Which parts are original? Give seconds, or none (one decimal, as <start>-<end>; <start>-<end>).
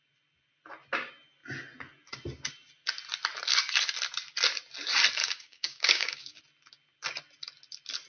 0.0-5.2; 6.4-8.1